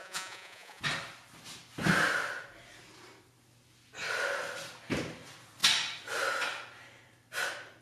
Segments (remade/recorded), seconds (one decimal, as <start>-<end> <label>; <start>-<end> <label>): 0.0-0.8 remade; 0.8-7.8 recorded

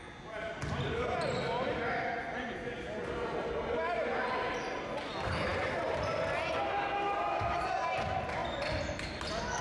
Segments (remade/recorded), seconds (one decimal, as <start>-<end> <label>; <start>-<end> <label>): 0.0-9.6 recorded

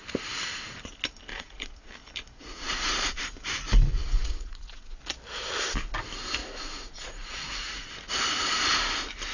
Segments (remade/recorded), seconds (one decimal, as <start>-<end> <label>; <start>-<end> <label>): 0.0-1.3 recorded; 1.3-1.9 remade; 1.9-2.5 recorded; 2.5-3.2 remade; 3.2-3.9 recorded; 3.9-5.0 remade; 5.0-6.4 recorded; 6.4-7.9 remade; 7.9-9.3 recorded

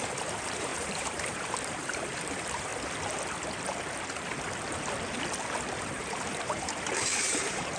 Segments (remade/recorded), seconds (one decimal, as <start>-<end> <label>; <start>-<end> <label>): 0.0-2.7 remade; 2.7-5.8 recorded; 5.8-7.8 remade

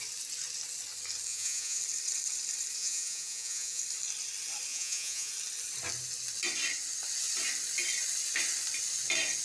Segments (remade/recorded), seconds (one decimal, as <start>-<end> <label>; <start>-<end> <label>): 0.0-1.3 recorded; 1.3-1.8 remade; 1.8-2.8 recorded; 2.8-3.8 remade; 3.8-4.7 recorded; 4.7-5.3 remade; 5.3-9.4 recorded

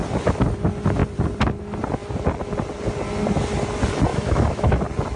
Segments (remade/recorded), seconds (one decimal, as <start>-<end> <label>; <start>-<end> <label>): 0.0-4.1 recorded; 4.1-4.8 remade; 4.8-5.2 recorded